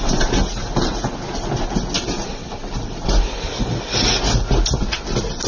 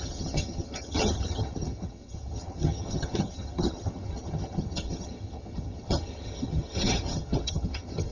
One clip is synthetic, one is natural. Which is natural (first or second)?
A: first